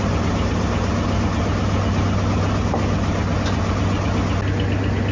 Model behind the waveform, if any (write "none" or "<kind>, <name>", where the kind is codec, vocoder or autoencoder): none